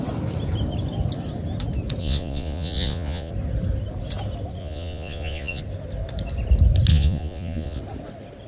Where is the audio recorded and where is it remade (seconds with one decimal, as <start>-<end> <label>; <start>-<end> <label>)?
0.0-2.0 recorded; 2.0-3.3 remade; 3.3-4.6 recorded; 4.6-5.6 remade; 5.6-6.9 recorded; 6.9-7.8 remade; 7.8-8.5 recorded